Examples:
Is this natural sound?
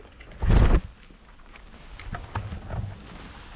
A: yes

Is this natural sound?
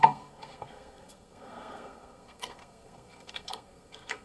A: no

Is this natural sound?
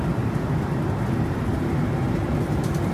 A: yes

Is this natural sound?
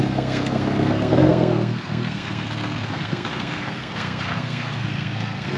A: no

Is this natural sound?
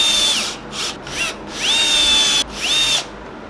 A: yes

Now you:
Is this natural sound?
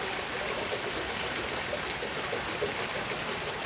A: yes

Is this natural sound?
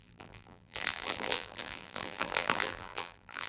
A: no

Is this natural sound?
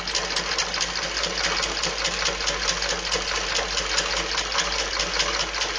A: yes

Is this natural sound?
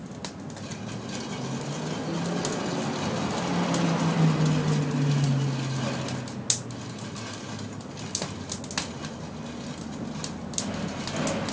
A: yes